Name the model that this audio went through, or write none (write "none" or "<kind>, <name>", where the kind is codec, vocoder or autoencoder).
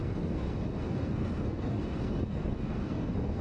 codec, SNAC